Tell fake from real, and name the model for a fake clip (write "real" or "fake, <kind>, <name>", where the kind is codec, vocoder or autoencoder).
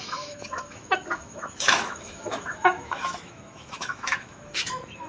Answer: fake, autoencoder, DAC-VAE